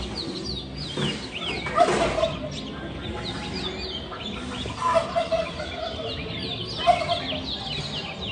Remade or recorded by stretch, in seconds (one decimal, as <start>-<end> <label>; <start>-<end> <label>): 0.0-8.3 recorded